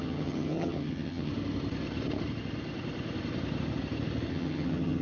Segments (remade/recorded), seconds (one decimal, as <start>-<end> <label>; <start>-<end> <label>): 0.0-1.3 remade; 1.3-4.3 recorded; 4.3-5.0 remade